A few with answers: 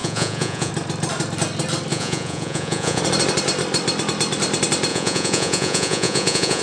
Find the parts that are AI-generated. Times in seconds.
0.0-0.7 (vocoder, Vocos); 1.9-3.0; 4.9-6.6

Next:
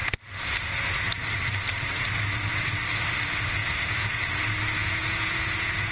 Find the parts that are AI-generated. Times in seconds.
3.6-4.3 (vocoder, Vocos); 4.8-5.9